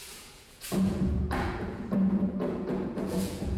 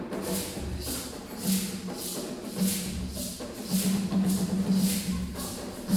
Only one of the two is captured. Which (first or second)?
second